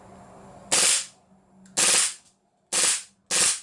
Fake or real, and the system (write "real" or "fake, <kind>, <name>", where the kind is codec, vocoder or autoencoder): real